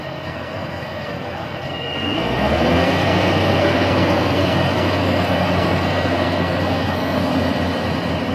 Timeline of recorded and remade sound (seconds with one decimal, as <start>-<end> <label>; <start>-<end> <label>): 0.0-7.3 remade; 7.3-8.3 recorded